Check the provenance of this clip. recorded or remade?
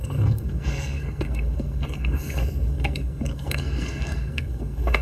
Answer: remade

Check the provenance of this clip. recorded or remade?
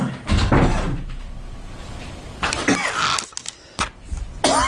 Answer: recorded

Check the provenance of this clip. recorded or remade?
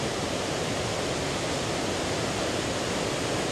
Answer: recorded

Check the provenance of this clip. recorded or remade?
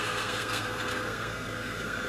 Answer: remade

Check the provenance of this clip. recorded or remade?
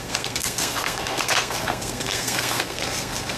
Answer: remade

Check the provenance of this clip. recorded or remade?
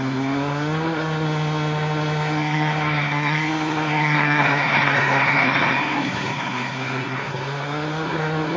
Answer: remade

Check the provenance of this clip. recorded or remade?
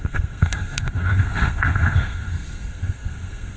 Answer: remade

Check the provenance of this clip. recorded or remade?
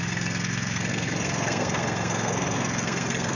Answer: remade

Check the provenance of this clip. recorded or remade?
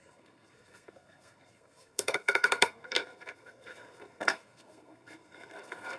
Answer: remade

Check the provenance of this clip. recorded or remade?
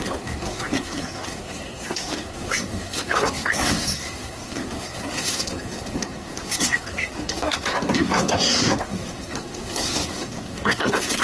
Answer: remade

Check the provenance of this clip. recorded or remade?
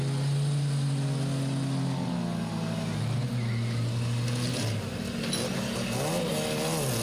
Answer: recorded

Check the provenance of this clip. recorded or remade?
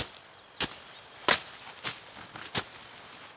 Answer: recorded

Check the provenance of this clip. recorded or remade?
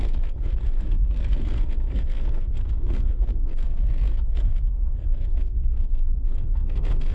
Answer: remade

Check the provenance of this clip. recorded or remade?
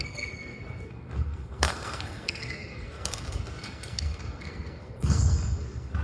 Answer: remade